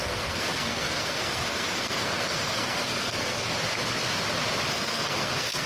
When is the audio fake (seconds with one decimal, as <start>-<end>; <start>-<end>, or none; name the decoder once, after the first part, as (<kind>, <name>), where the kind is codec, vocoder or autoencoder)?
0.0-3.5 (codec, SNAC); 4.7-5.7